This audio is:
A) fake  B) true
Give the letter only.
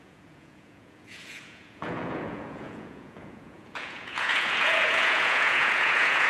A